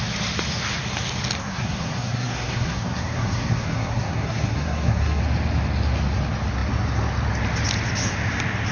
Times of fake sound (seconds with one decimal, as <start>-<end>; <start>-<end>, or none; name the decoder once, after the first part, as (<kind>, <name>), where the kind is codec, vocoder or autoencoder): 1.4-5.2 (codec, SNAC)